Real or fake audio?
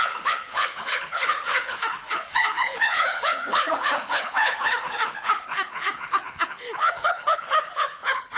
fake